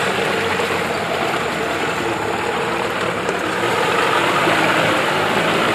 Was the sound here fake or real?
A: real